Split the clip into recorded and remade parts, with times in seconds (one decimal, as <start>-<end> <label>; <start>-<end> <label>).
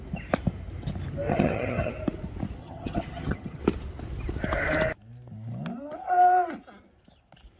0.0-1.3 recorded; 1.3-1.9 remade; 1.9-2.6 recorded; 2.6-3.6 remade; 3.6-7.6 recorded